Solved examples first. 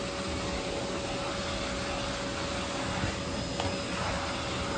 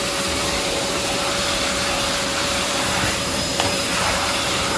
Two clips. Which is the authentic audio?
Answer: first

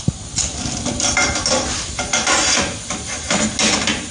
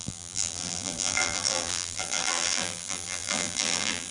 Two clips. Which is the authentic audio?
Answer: first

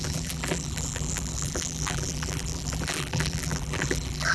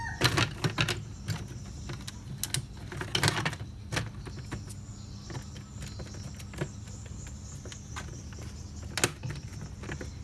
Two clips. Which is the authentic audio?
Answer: second